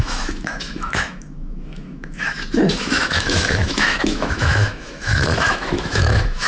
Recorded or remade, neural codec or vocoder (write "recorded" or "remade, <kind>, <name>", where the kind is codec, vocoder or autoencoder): remade, autoencoder, DAC-VAE